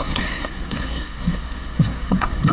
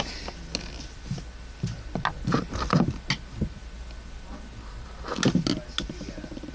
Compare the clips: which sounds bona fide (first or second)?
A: second